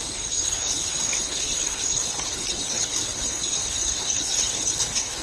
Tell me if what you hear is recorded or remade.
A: remade